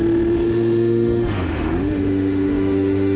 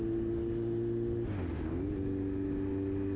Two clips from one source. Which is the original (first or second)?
second